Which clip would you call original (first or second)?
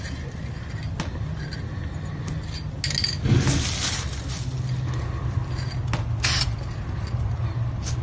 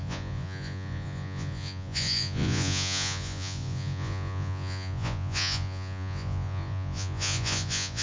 first